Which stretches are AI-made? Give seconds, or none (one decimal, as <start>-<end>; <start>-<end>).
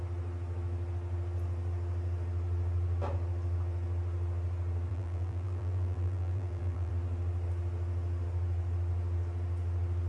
4.9-6.9